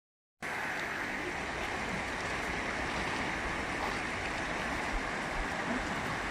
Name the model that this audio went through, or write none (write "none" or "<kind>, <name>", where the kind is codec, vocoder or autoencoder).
none